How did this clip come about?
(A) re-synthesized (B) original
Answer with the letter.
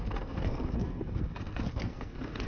A